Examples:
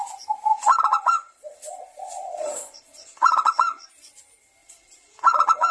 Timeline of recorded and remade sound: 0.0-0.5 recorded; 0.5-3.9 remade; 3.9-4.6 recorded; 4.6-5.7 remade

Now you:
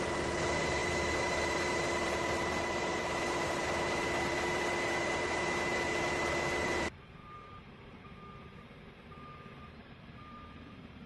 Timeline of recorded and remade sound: 0.0-8.5 remade; 8.5-9.7 recorded; 9.7-11.1 remade

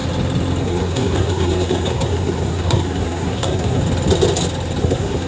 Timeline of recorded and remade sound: 0.0-0.6 recorded; 0.6-3.8 remade; 3.8-4.8 recorded; 4.8-5.3 remade

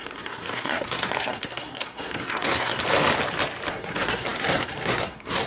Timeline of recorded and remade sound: 0.0-2.8 remade; 2.8-3.7 recorded; 3.7-5.5 remade

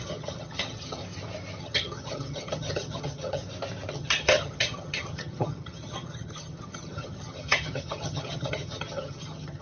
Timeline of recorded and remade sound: 0.0-1.0 remade; 1.0-1.6 recorded; 1.6-3.4 remade; 3.4-3.9 recorded; 3.9-9.6 remade